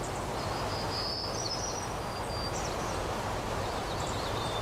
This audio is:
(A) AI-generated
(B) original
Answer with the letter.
B